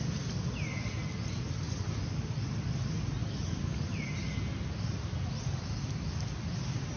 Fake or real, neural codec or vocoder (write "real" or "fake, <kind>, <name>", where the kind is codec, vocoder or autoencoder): real